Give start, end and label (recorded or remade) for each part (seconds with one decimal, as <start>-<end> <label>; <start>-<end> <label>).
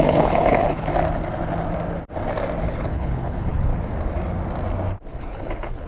0.0-0.9 remade; 0.9-2.6 recorded; 2.6-3.7 remade; 3.7-5.2 recorded; 5.2-5.9 remade